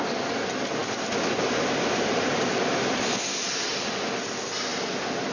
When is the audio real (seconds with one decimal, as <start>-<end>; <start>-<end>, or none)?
0.0-5.3